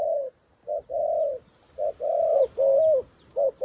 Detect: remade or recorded recorded